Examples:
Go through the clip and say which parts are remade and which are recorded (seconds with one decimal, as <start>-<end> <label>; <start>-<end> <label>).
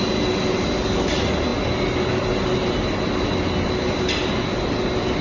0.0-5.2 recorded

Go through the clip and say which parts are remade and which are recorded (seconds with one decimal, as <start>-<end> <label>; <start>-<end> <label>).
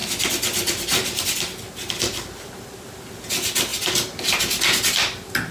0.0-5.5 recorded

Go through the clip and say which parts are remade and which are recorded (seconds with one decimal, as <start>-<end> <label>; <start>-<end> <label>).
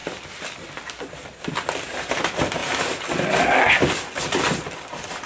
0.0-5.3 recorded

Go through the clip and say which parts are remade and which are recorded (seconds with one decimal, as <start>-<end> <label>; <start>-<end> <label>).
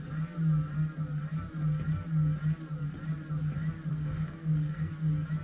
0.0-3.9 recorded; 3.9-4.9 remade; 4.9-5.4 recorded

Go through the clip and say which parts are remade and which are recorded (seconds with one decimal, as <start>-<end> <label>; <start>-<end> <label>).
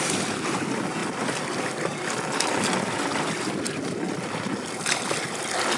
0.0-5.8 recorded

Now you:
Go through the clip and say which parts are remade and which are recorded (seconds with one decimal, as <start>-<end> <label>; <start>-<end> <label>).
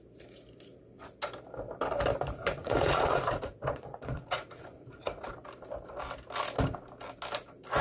0.0-2.4 recorded; 2.4-5.3 remade; 5.3-7.8 recorded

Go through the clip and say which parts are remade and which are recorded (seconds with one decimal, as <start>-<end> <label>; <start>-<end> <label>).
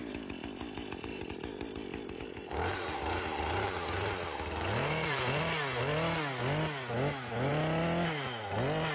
0.0-1.1 recorded; 1.1-5.4 remade; 5.4-8.9 recorded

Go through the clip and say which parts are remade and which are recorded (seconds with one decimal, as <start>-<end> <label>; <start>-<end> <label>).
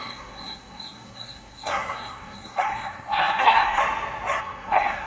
0.0-3.8 remade; 3.8-4.4 recorded; 4.4-5.1 remade